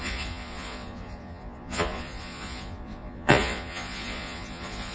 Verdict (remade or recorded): remade